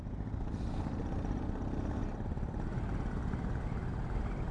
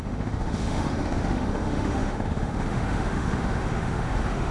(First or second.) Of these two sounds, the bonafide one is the first